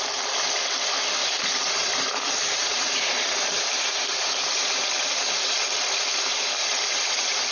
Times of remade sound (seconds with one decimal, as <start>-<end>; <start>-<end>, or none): 1.2-4.8; 6.6-7.5